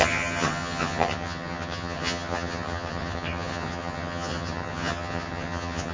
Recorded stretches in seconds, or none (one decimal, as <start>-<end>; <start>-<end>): none